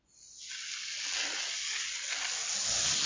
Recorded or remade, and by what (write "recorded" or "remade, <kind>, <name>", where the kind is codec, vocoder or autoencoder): recorded